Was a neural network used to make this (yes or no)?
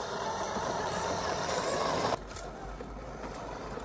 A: no